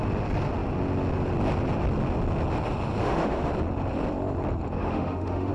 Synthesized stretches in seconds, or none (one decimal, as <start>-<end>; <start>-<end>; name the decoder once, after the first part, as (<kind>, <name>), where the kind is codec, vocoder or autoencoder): 3.0-3.5 (autoencoder, DAC-VAE); 4.8-5.5